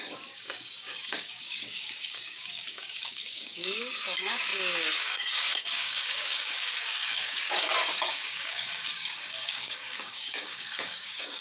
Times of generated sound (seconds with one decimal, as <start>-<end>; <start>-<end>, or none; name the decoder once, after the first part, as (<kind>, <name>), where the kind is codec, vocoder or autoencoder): 0.0-11.4 (codec, DAC)